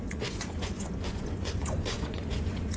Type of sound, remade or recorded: remade